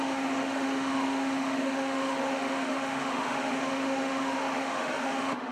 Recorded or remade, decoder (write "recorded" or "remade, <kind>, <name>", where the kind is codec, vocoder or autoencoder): remade, autoencoder, DAC-VAE